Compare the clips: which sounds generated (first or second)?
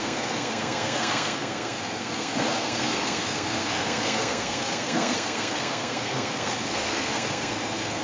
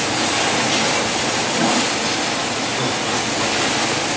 first